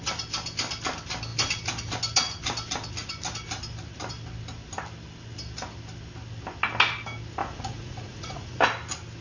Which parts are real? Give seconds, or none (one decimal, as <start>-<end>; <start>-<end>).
0.0-7.4; 8.6-9.2